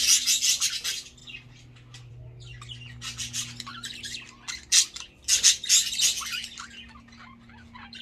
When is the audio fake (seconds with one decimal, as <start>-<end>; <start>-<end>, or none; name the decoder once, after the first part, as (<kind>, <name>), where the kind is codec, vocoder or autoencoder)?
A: none